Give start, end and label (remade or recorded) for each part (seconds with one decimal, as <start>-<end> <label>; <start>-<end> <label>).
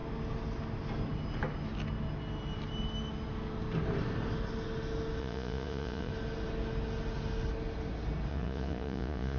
0.0-5.2 recorded; 5.2-6.1 remade; 6.1-8.3 recorded; 8.3-9.4 remade